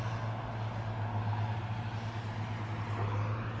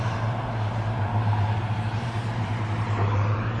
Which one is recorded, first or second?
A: first